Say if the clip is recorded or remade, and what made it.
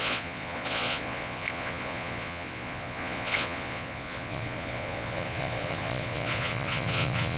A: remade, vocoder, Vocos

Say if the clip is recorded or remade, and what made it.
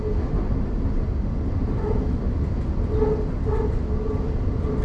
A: recorded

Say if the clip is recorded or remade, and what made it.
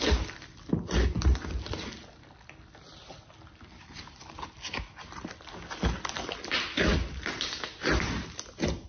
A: recorded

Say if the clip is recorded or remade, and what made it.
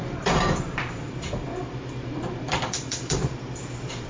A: remade, vocoder, BigVGAN v2